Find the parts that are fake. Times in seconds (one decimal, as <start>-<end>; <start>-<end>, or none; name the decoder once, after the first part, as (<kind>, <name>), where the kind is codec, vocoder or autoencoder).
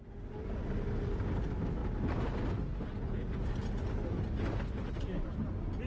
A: none